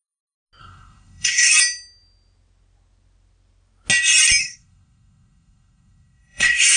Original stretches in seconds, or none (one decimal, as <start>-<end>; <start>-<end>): 0.0-0.6; 1.5-4.4